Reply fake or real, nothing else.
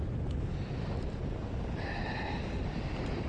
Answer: real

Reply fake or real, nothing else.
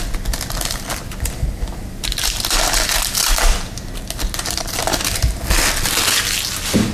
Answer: real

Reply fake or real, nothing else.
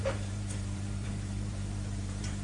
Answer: fake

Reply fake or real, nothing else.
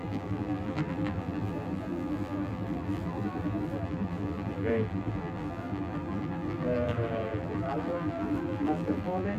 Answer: fake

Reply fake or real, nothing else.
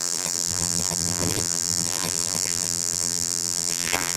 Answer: fake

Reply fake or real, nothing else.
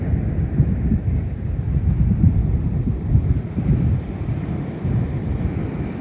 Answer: real